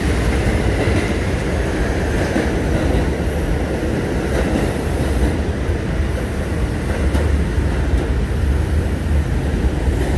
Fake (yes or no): no